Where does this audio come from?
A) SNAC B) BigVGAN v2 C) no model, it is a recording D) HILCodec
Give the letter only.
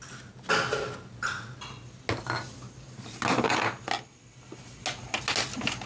C